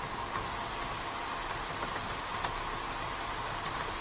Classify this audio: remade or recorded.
recorded